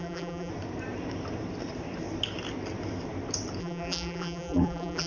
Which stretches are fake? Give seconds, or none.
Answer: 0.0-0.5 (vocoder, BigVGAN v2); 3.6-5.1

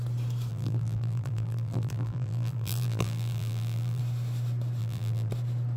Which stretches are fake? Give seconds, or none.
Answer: 0.5-4.0 (vocoder, BigVGAN v2); 4.8-5.3

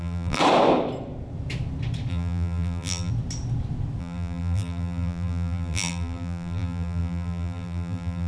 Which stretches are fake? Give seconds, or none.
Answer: 0.0-0.4 (vocoder, BigVGAN v2); 2.1-3.1; 4.0-8.3

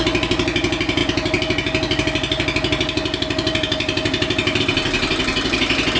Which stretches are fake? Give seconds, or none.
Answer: none